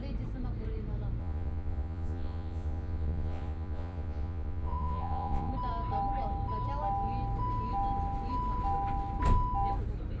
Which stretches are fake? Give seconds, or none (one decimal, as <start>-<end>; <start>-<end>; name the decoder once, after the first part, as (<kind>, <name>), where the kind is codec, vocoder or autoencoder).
1.2-5.5 (vocoder, Vocos)